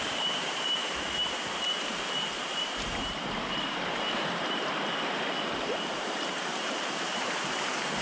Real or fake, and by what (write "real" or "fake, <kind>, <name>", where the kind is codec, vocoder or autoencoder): fake, vocoder, BigVGAN v2